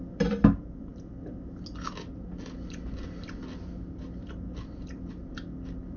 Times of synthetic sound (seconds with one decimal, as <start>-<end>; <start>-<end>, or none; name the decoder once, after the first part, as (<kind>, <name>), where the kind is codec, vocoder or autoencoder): none